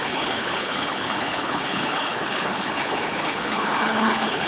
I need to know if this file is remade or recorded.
remade